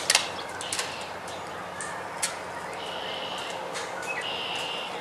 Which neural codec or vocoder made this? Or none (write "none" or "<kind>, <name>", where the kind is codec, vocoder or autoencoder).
none